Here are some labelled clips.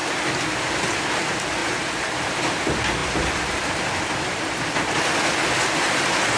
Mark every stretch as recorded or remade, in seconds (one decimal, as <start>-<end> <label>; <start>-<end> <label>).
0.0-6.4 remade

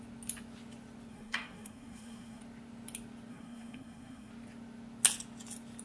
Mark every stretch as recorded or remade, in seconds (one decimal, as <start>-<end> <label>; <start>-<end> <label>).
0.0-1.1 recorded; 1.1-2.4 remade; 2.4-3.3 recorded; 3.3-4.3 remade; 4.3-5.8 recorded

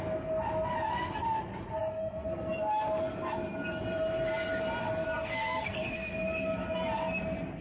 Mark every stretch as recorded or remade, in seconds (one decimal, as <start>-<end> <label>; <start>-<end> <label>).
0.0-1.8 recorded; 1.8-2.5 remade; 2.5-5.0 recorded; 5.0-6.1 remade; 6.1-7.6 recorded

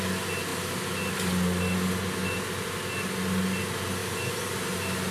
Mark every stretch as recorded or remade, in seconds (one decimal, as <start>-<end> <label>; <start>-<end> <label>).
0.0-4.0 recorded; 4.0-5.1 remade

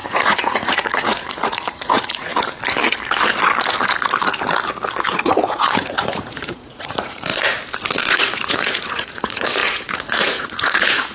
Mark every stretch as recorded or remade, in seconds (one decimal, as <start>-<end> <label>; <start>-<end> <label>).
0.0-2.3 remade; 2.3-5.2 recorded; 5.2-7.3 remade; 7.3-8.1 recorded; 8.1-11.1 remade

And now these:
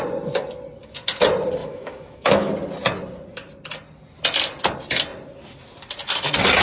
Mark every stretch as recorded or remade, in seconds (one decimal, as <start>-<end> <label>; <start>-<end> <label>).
0.0-1.6 recorded; 1.6-2.5 remade; 2.5-6.6 recorded

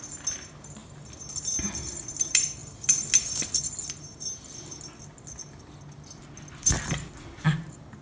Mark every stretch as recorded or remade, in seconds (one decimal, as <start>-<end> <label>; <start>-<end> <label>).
0.0-8.0 recorded

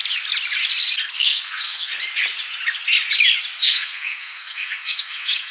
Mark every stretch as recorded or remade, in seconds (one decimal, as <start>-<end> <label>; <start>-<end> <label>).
0.0-1.1 recorded; 1.1-1.9 remade; 1.9-3.6 recorded; 3.6-5.5 remade